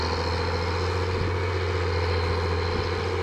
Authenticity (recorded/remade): recorded